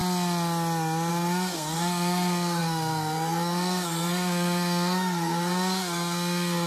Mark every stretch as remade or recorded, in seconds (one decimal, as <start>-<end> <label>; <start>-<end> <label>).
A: 0.0-1.1 recorded; 1.1-6.7 remade